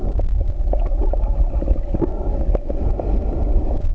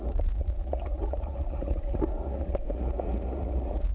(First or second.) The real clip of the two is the first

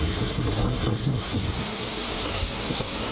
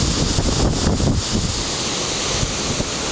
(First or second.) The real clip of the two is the second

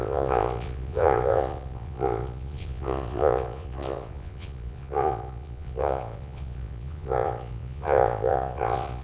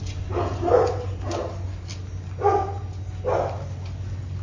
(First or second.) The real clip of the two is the second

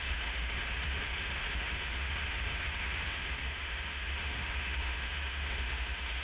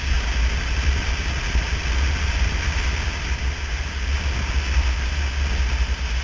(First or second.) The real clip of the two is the second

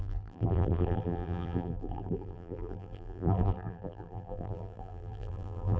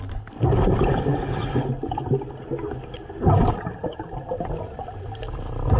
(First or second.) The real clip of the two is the second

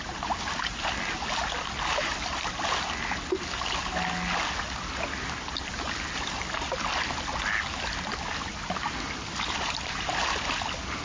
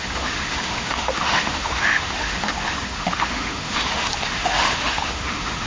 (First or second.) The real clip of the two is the first